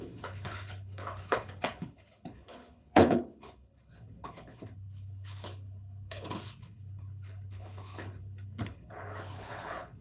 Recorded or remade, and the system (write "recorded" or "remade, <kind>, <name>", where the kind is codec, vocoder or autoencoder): remade, codec, HILCodec